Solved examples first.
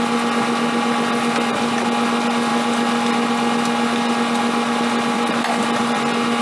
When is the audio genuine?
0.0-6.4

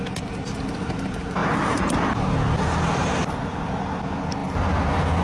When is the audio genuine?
0.0-5.2

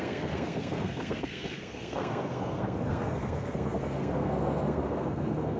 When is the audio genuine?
none

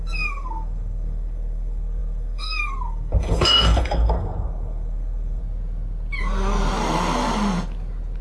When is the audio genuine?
5.4-8.2

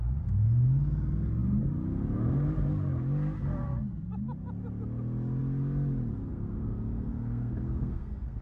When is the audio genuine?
0.0-6.3

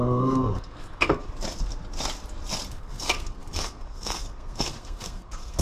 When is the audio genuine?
1.3-2.7